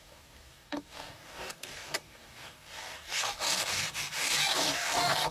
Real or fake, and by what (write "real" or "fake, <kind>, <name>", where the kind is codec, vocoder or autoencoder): fake, codec, DAC